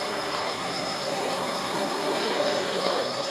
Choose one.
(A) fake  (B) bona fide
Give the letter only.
A